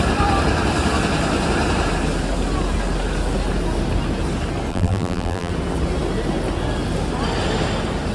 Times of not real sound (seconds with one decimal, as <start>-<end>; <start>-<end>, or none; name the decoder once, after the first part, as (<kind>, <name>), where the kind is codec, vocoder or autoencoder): 4.7-5.5 (vocoder, BigVGAN v2)

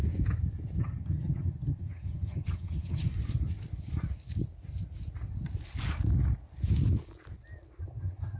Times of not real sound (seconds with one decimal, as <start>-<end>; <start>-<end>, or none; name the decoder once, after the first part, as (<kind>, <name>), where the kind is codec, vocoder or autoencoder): 0.8-3.1 (vocoder, HiFi-GAN); 7.8-8.4

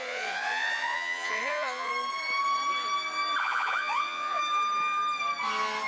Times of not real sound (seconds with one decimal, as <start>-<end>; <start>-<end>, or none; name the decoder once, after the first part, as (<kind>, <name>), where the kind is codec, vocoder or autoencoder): 0.0-1.9 (vocoder, Vocos); 3.4-4.4

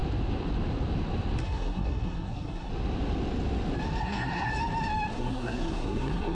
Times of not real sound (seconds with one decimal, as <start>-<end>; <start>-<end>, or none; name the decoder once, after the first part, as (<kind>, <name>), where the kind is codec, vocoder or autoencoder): 1.4-2.7 (codec, SNAC); 4.0-4.5; 5.1-6.3